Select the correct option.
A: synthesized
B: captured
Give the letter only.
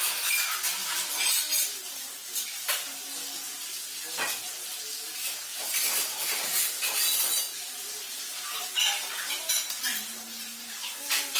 B